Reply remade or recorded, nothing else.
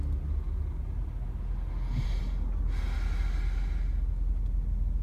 recorded